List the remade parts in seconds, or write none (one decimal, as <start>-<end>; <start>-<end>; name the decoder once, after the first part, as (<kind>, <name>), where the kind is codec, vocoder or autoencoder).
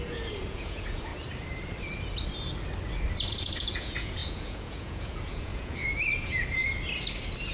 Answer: 0.0-1.1 (vocoder, Vocos); 3.3-6.6